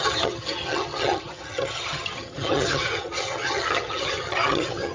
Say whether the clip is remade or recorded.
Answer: remade